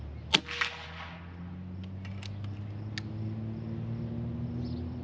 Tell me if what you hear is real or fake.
real